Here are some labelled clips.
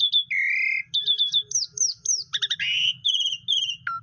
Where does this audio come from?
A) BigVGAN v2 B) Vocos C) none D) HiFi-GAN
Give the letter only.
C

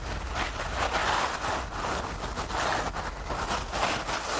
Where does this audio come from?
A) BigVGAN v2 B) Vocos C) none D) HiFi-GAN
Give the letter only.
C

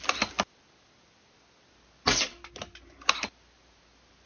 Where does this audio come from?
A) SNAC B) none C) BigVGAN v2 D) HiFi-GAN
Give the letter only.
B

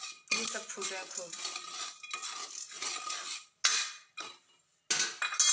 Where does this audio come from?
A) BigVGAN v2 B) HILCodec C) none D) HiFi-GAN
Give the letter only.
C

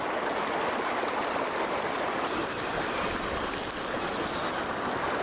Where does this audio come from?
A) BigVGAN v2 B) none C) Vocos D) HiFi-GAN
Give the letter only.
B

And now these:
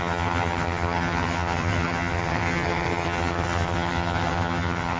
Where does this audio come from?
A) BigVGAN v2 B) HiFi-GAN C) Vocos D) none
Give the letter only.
B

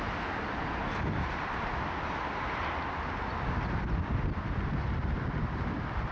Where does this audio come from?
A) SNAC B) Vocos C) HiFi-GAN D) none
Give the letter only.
D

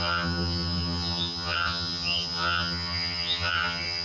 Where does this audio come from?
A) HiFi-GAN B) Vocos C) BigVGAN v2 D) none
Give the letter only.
A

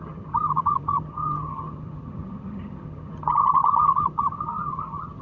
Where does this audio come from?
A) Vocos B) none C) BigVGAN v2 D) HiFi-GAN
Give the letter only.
D